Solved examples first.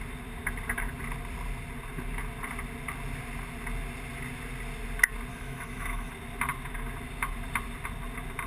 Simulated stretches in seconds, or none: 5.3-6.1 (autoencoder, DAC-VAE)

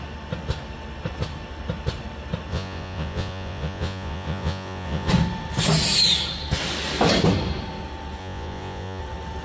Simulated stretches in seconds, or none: 2.5-5.1 (vocoder, Vocos); 8.2-9.0

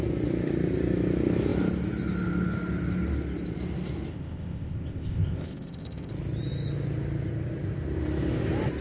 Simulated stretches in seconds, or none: 4.1-6.1 (codec, ZipCodec)

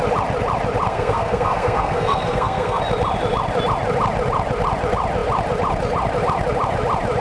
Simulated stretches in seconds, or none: 0.9-2.8 (codec, SNAC)

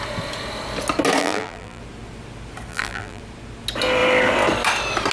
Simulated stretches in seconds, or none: 1.2-1.8 (vocoder, BigVGAN v2); 2.7-3.2

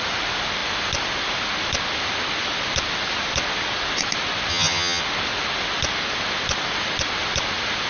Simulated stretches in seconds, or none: 4.5-5.0 (vocoder, HiFi-GAN)

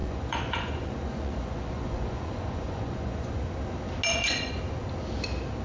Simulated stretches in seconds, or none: 0.0-3.4 (vocoder, Vocos); 4.1-4.6

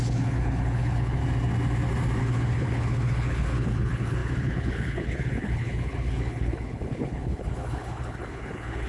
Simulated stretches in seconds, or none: 0.0-1.2 (codec, HILCodec); 2.2-8.9